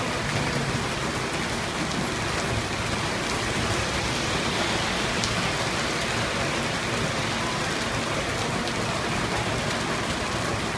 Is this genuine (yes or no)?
yes